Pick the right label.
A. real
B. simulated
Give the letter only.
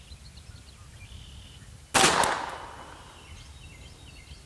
A